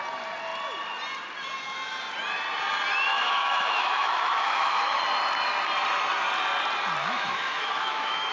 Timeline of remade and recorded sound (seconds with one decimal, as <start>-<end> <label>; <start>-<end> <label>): 0.0-3.1 recorded; 3.1-5.0 remade; 5.0-7.0 recorded; 7.0-8.3 remade